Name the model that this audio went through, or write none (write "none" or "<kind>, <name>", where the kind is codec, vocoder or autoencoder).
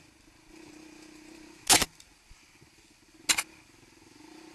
none